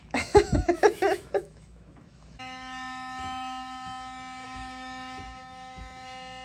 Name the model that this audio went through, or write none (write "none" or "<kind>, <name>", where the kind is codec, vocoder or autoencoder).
autoencoder, DAC-VAE